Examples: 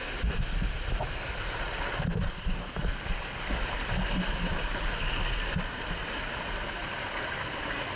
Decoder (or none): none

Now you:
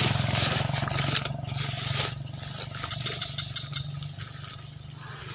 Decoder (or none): none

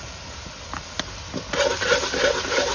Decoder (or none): none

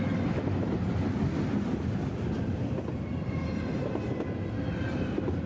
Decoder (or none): none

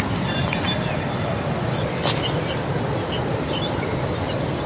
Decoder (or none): none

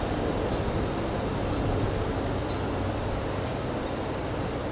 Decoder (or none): none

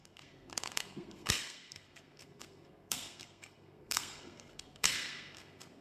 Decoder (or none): codec, SNAC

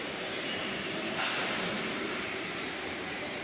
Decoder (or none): vocoder, BigVGAN v2